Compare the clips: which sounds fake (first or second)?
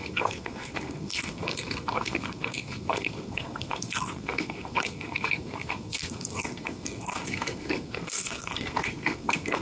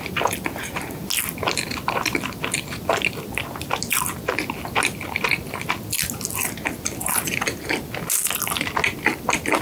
first